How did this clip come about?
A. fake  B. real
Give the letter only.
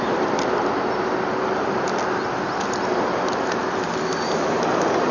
B